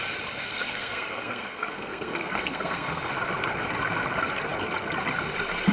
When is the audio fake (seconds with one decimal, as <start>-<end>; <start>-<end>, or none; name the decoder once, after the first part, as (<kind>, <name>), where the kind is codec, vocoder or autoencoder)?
0.5-3.1 (codec, SNAC)